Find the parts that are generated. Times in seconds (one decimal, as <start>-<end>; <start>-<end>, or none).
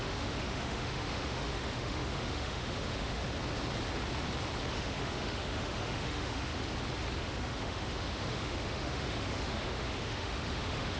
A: 0.0-3.2; 4.7-6.5; 7.2-11.0